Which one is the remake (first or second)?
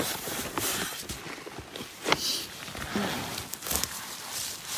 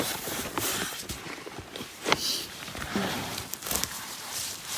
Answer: second